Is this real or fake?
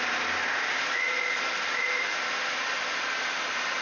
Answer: real